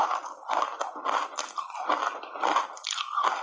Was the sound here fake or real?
real